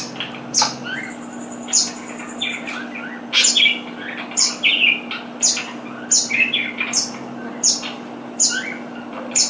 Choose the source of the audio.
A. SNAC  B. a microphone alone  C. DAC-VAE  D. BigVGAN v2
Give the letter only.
B